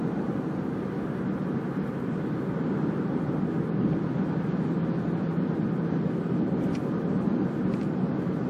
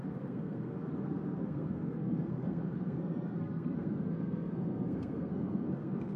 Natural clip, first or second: first